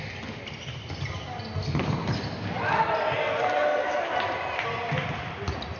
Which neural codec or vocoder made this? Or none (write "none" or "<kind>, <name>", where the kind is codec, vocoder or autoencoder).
none